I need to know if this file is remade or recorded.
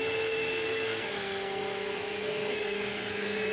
remade